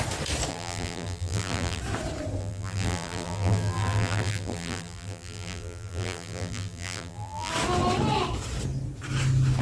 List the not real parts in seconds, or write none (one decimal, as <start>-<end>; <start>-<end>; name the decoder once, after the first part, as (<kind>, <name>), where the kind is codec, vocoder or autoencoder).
0.5-1.8 (vocoder, BigVGAN v2); 2.4-7.5